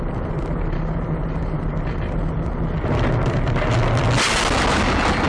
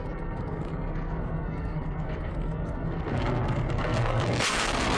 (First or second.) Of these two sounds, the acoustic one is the first